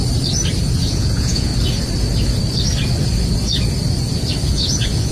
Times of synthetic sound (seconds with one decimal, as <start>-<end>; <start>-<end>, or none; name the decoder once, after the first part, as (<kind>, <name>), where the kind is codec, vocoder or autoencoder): 0.9-1.5 (vocoder, Vocos); 4.5-5.1